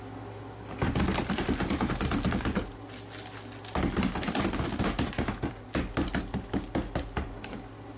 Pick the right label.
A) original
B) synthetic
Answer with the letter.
A